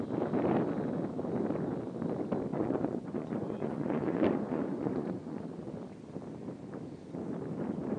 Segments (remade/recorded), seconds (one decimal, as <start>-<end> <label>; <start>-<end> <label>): 0.0-2.5 recorded; 2.5-5.7 remade; 5.7-8.0 recorded